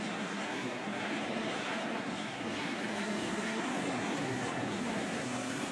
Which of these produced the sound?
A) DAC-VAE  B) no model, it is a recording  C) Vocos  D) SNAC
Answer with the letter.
D